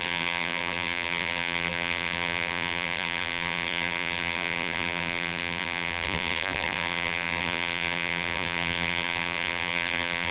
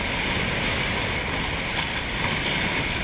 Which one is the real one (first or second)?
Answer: second